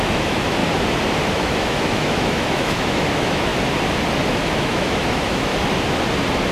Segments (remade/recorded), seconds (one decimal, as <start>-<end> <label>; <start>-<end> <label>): 0.0-0.6 remade; 0.6-1.3 recorded; 1.3-3.5 remade; 3.5-4.3 recorded; 4.3-5.5 remade; 5.5-6.5 recorded